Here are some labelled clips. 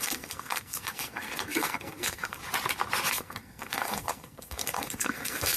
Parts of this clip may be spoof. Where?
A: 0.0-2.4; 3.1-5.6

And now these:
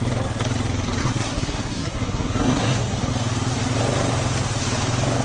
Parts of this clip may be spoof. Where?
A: 1.0-3.1

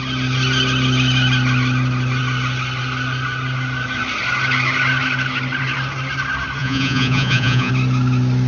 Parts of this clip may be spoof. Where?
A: 6.6-7.7

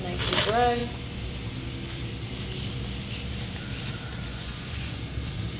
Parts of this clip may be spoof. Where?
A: 4.3-5.0